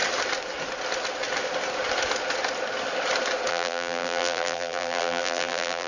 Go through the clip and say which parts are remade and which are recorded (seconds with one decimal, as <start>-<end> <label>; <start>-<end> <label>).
0.0-3.5 recorded; 3.5-5.9 remade